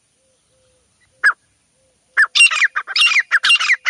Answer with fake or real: real